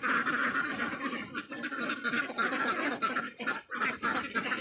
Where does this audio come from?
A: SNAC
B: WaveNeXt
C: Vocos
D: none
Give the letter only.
D